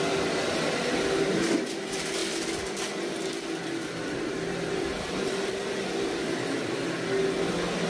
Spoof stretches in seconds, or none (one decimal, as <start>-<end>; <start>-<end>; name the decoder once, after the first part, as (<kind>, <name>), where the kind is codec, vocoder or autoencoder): 2.2-6.9 (vocoder, BigVGAN v2)